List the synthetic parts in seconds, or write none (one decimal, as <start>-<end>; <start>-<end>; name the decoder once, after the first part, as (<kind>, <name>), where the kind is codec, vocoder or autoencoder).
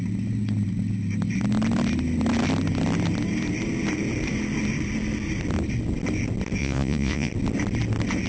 6.6-7.3 (vocoder, Vocos)